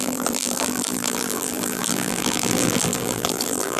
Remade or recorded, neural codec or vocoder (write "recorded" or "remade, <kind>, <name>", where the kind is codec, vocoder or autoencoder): remade, vocoder, BigVGAN v2